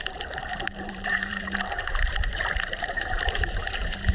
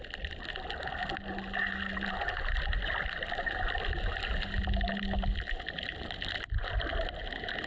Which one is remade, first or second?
first